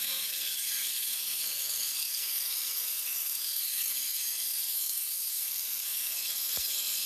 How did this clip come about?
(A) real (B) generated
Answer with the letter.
B